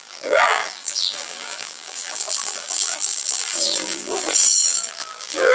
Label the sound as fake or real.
fake